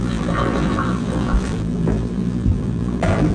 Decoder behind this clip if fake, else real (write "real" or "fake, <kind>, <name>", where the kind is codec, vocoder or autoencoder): fake, vocoder, BigVGAN v2